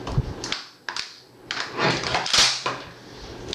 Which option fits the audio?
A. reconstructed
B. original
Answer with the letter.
B